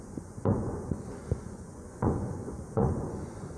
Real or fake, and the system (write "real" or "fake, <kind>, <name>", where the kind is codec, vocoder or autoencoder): fake, vocoder, Vocos